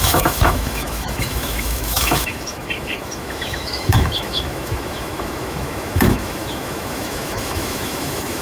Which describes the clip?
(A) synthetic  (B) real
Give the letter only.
A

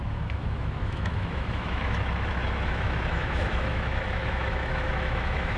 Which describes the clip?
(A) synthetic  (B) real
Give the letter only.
A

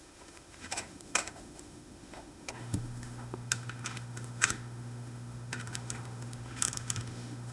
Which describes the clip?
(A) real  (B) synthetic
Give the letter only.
B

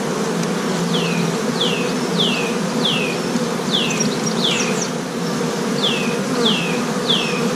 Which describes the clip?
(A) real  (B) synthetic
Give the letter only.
A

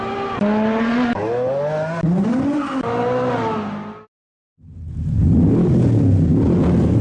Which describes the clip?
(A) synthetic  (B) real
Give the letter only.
B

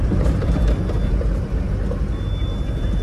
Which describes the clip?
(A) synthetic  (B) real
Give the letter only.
B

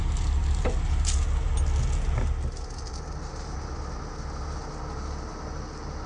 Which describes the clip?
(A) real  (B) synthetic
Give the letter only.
A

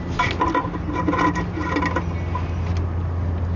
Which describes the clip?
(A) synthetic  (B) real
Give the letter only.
B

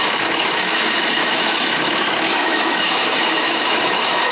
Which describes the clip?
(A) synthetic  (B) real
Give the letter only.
A